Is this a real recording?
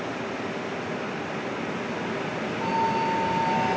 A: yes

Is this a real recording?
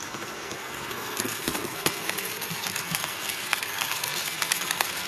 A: no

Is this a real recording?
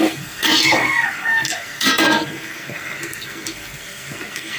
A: no